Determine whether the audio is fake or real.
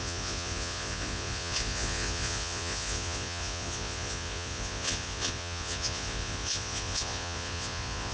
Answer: fake